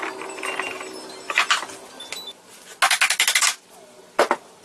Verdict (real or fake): real